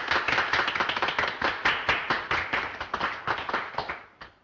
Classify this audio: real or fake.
real